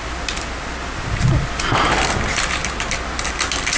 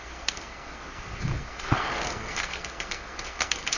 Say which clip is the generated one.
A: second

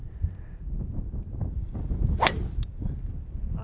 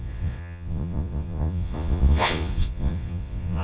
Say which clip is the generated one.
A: second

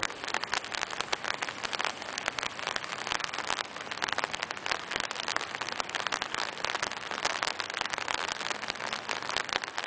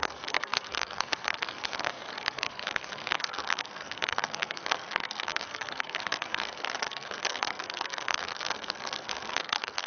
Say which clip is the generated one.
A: second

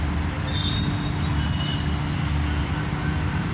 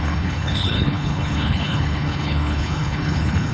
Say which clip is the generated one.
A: second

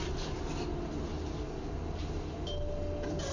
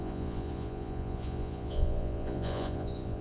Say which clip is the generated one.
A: second